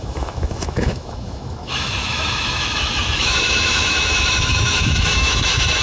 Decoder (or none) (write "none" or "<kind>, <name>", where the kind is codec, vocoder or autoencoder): autoencoder, DAC-VAE